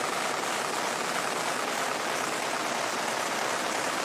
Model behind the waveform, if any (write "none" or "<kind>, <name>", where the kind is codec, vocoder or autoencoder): none